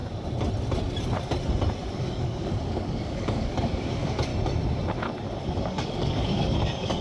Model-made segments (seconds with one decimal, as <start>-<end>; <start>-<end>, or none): 1.9-4.3; 5.4-7.0